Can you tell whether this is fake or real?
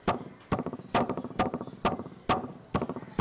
real